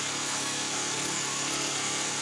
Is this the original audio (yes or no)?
no